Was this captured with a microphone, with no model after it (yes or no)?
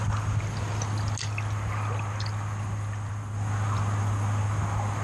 yes